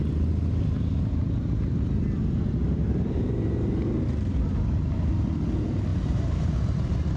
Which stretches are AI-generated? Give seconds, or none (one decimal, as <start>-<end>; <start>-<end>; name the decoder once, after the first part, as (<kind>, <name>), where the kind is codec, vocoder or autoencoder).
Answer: 2.8-4.4 (vocoder, BigVGAN v2); 5.9-6.5